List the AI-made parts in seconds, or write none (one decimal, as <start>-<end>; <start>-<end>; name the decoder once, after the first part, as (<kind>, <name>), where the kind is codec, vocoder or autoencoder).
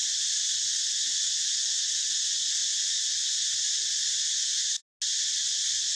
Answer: none